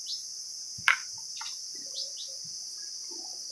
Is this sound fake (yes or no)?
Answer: yes